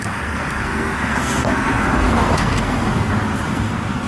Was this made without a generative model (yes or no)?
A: no